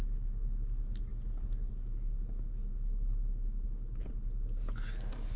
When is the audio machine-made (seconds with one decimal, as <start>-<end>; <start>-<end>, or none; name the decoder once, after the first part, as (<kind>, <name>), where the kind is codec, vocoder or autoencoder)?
none